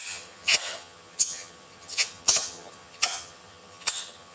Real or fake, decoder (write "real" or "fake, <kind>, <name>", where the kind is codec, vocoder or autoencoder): fake, vocoder, HiFi-GAN